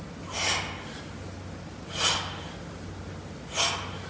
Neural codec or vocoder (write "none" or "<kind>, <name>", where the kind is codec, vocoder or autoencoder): none